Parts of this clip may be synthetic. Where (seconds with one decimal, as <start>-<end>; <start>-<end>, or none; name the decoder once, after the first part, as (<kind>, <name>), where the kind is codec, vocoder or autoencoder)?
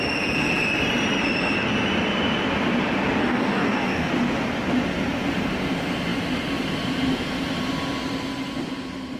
3.2-4.1 (codec, DAC)